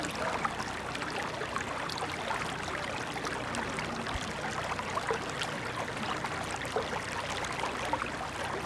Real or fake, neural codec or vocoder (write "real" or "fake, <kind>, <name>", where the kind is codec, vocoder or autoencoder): real